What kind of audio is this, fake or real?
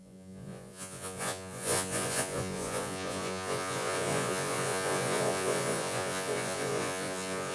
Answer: fake